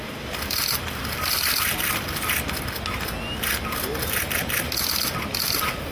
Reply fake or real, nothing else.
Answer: real